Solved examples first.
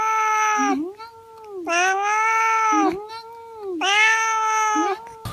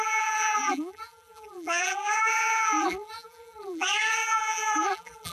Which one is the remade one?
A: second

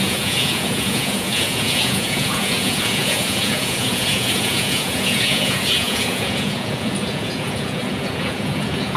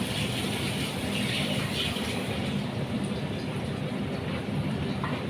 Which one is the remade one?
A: first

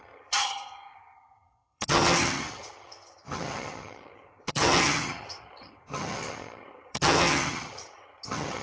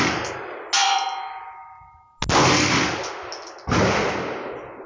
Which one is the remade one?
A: first